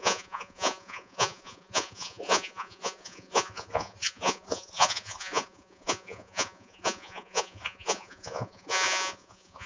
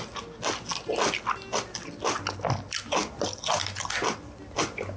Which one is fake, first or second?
first